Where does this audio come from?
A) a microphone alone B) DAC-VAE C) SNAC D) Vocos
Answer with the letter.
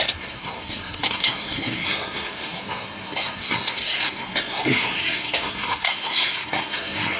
C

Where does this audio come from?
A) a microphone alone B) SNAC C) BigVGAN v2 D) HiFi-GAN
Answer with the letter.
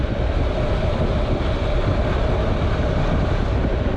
A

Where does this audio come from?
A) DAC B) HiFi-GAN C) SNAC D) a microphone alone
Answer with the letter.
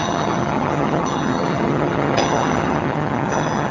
B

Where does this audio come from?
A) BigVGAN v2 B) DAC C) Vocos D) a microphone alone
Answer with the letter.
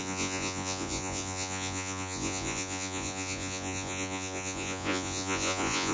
C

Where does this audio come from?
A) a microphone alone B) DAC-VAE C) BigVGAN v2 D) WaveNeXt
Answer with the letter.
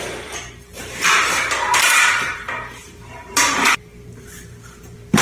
C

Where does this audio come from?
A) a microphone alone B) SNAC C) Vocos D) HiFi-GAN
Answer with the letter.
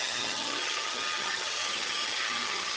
D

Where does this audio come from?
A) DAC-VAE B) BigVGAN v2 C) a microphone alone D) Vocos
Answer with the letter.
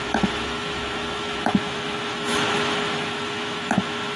A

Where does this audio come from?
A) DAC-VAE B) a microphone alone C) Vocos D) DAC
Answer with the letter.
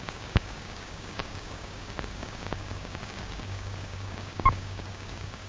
D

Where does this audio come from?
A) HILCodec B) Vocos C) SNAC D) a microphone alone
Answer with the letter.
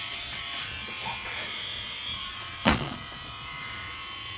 B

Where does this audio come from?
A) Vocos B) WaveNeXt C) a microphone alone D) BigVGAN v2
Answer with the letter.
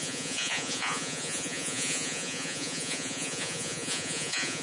A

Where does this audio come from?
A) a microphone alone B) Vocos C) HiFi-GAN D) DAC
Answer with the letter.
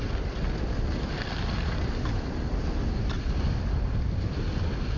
A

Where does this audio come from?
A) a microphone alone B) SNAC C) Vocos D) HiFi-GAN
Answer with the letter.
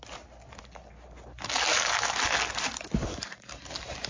A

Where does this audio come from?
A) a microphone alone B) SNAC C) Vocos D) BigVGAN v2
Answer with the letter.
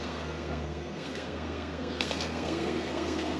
B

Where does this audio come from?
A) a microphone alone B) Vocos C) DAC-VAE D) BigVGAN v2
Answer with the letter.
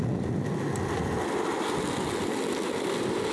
A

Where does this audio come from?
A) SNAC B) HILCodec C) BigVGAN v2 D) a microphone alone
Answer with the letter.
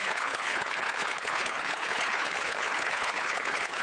B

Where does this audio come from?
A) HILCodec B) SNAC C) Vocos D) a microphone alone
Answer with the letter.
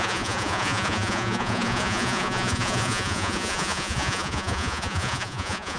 C